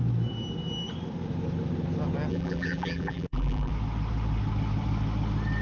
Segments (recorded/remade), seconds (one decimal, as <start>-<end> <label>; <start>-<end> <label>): 0.0-2.3 recorded; 2.3-3.7 remade; 3.7-5.6 recorded